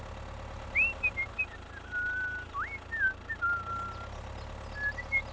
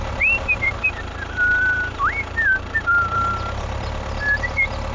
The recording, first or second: first